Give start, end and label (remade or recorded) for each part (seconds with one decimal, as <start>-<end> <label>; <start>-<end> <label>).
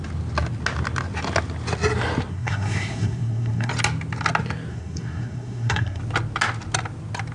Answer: 0.0-2.3 recorded; 2.3-3.7 remade; 3.7-4.7 recorded; 4.7-6.0 remade; 6.0-7.3 recorded